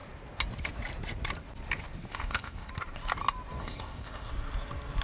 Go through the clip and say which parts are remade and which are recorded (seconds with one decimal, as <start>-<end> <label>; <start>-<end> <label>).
0.0-2.1 recorded; 2.1-2.7 remade; 2.7-3.6 recorded; 3.6-4.3 remade; 4.3-5.0 recorded